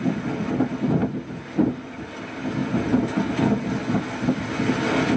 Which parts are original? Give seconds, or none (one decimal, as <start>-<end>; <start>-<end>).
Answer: 0.0-5.2